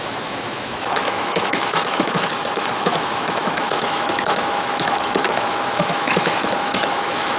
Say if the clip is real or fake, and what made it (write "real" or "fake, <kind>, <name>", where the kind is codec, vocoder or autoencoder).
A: fake, autoencoder, DAC-VAE